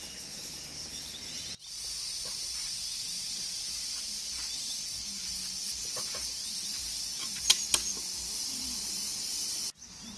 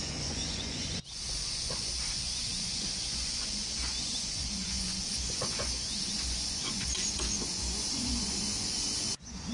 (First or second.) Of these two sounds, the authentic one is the first